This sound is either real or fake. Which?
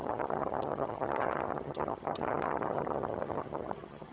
fake